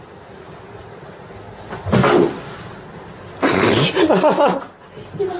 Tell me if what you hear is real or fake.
real